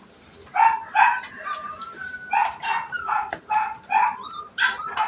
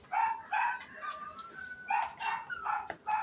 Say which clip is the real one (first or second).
second